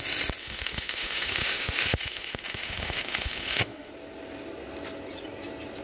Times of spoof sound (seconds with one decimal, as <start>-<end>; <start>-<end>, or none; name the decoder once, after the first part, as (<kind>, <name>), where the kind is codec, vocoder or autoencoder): 0.4-3.9 (autoencoder, DAC-VAE)

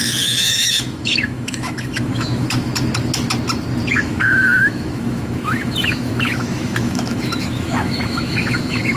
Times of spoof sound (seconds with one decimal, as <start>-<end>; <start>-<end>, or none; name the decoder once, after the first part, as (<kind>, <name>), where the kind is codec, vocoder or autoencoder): 0.0-2.7 (autoencoder, DAC-VAE); 3.9-9.0

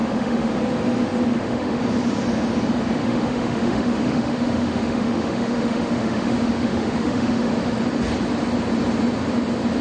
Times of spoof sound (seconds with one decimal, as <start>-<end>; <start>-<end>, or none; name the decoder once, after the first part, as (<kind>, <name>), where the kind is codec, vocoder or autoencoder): 0.0-0.5 (autoencoder, DAC-VAE); 1.3-1.8; 3.0-7.5

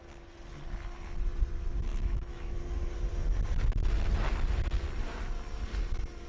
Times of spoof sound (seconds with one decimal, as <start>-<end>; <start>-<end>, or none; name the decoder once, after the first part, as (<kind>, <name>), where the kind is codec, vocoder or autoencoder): 1.9-2.6 (autoencoder, DAC-VAE)

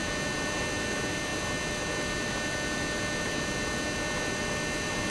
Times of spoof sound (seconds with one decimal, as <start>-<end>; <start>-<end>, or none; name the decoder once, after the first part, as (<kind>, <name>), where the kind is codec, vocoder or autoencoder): none